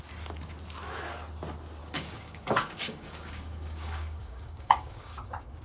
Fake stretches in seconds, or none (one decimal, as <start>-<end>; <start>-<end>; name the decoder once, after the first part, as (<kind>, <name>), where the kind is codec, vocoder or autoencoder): 1.8-5.6 (codec, DAC)